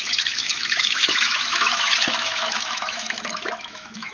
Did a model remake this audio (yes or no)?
yes